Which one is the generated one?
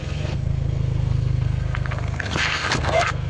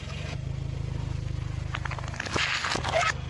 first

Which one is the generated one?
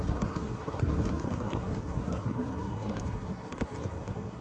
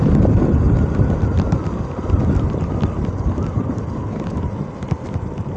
first